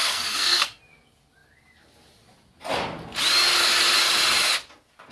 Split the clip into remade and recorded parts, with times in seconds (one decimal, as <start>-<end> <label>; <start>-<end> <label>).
0.0-0.8 remade; 0.8-5.1 recorded

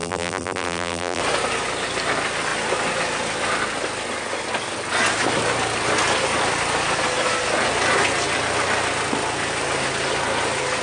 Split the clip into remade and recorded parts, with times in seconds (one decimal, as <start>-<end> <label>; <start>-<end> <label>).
0.0-1.2 remade; 1.2-10.8 recorded

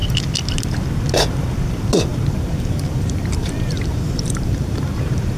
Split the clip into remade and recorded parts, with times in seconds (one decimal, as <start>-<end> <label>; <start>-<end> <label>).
0.0-2.1 recorded; 2.1-5.4 remade